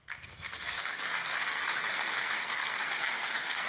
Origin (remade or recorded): remade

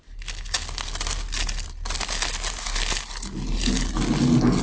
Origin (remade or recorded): recorded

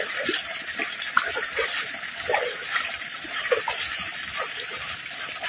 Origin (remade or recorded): recorded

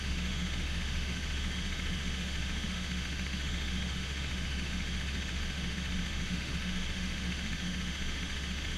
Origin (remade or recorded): remade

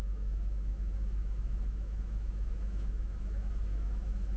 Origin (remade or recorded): remade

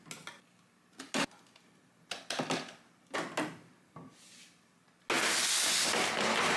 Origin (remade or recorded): recorded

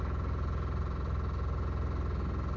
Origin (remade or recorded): recorded